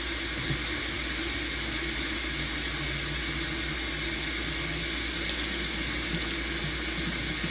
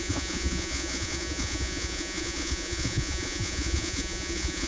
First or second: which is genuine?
first